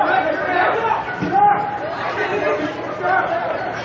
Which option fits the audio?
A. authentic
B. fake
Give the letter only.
B